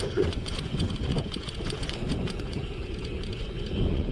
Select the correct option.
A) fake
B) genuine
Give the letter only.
A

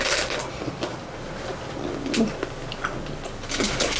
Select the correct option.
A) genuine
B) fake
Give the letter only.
A